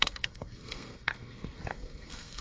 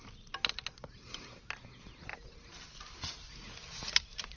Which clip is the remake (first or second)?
first